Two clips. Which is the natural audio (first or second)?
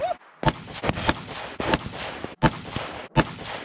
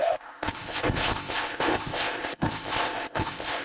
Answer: first